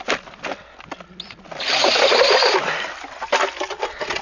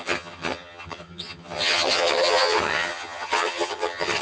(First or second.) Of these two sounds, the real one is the first